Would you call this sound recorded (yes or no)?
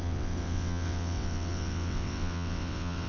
no